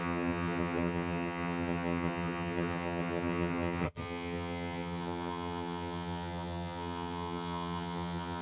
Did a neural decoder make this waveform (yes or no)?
yes